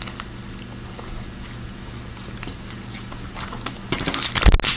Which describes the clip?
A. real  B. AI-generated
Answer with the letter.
A